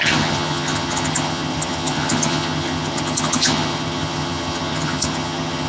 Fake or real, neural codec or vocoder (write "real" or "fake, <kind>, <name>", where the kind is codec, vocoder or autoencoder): fake, vocoder, HiFi-GAN